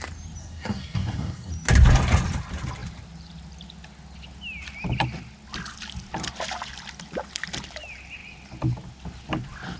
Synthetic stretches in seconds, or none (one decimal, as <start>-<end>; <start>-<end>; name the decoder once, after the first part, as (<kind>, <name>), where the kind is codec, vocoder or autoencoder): 0.4-1.5 (codec, SNAC)